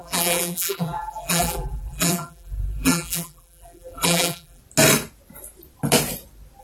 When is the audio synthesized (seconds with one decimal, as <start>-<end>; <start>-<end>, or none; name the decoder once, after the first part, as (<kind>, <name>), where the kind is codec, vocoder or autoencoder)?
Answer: 0.0-4.6 (vocoder, BigVGAN v2)